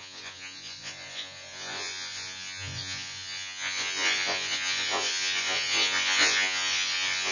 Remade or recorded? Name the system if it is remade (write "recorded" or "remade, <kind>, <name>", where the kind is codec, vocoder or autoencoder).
remade, vocoder, Vocos